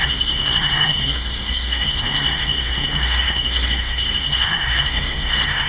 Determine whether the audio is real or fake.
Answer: fake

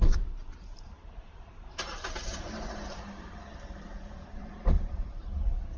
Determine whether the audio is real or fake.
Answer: fake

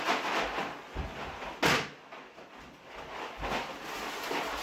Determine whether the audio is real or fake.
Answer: real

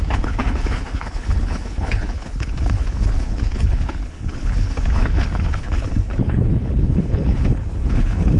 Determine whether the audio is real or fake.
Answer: fake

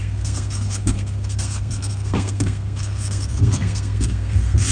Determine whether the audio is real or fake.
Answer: fake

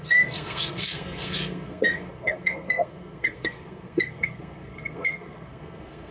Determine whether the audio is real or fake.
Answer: fake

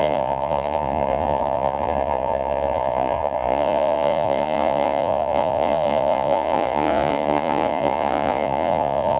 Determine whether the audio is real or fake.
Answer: fake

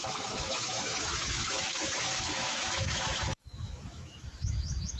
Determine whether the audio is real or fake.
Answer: fake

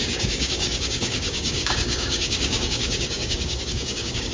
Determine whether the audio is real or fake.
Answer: fake